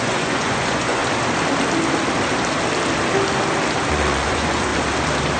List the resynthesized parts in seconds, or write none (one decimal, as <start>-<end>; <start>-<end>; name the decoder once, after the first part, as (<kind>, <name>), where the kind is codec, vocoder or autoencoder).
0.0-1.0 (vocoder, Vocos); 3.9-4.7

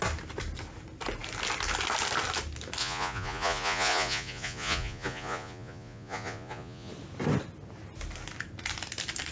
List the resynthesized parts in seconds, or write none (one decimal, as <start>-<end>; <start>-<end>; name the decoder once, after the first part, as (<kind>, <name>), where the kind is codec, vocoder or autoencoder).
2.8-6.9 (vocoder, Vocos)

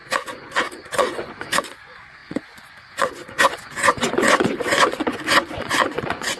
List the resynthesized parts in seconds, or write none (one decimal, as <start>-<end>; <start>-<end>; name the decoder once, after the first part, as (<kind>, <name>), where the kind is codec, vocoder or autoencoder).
0.0-6.4 (vocoder, Vocos)